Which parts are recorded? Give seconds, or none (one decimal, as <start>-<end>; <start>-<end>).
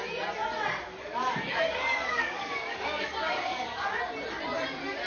0.0-0.9; 4.0-5.1